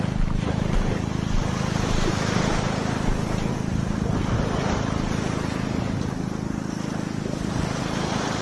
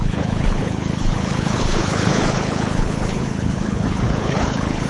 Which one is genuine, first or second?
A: first